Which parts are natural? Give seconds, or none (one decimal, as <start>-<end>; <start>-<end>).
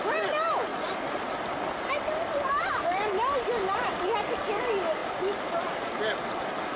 0.0-6.8